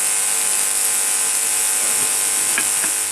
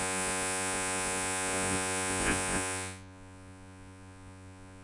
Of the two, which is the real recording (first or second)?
first